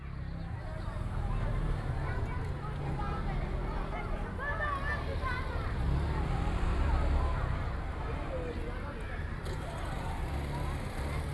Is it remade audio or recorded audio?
recorded